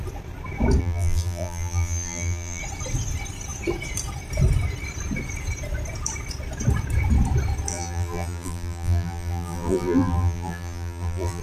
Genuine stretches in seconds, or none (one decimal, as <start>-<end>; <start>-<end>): 0.0-0.8; 2.6-7.7